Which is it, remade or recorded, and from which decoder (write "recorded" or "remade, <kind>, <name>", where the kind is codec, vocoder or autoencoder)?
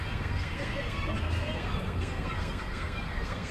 remade, codec, SNAC